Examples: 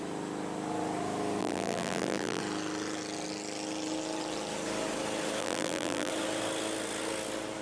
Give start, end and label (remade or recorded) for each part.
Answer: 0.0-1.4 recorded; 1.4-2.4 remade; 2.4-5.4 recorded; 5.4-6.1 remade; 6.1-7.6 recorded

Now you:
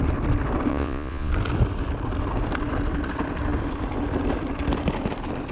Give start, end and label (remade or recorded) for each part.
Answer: 0.0-0.7 recorded; 0.7-1.3 remade; 1.3-5.5 recorded